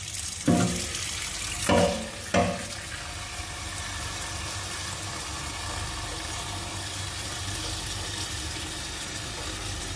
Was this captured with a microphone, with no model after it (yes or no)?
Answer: yes